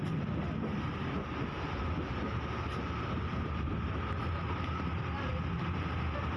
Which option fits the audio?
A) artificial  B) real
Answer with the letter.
B